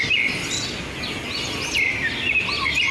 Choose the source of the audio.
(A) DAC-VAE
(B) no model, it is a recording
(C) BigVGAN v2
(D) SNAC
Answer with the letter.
B